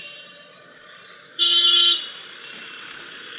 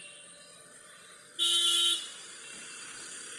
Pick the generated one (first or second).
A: first